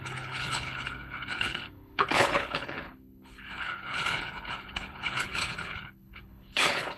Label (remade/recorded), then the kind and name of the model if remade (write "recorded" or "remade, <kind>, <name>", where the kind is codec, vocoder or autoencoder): remade, codec, HILCodec